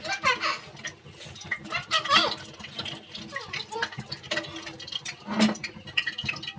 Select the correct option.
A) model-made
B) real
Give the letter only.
B